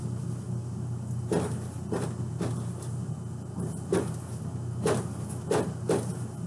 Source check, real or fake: real